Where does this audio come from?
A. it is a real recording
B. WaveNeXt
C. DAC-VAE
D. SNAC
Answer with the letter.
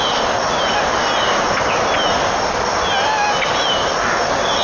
A